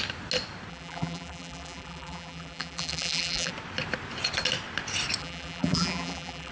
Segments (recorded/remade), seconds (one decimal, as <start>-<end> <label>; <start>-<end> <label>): 0.0-0.7 recorded; 0.7-3.5 remade; 3.5-5.2 recorded; 5.2-6.5 remade